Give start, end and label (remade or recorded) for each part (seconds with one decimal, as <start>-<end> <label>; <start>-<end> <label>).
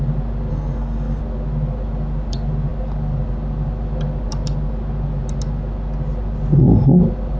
0.0-0.5 recorded; 0.5-1.2 remade; 1.2-7.4 recorded